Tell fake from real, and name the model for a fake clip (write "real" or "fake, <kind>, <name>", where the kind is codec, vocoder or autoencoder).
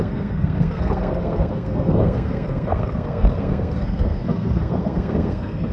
fake, codec, SNAC